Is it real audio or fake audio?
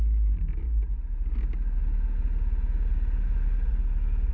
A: real